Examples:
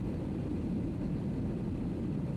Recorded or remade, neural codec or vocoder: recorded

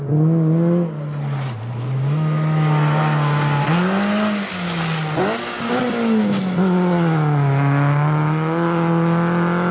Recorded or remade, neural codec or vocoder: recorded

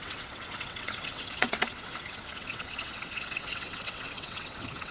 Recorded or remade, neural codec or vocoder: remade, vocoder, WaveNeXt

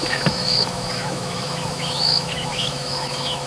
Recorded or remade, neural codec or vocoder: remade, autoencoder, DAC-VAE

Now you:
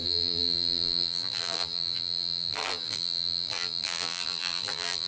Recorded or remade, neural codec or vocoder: remade, vocoder, BigVGAN v2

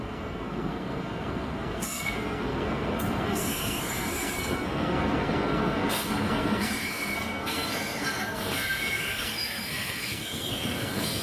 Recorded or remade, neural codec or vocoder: remade, codec, SNAC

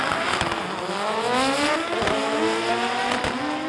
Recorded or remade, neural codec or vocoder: recorded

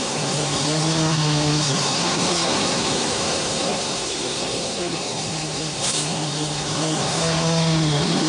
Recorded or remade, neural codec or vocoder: remade, codec, SNAC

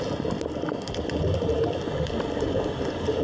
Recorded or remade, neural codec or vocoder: recorded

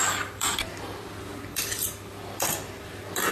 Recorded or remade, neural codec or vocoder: remade, vocoder, BigVGAN v2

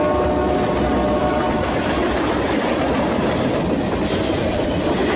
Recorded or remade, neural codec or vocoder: recorded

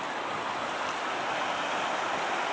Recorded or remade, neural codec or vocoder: recorded